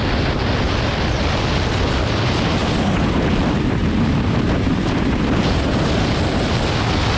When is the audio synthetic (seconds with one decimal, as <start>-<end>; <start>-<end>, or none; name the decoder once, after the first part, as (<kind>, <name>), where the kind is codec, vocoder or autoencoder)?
2.6-3.1 (vocoder, BigVGAN v2); 3.8-6.1